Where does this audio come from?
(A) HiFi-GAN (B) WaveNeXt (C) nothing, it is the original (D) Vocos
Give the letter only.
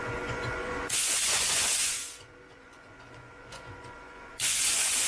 D